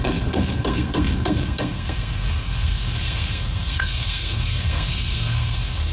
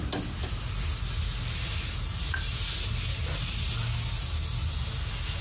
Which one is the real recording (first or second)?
second